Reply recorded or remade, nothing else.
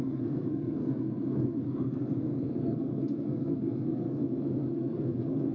remade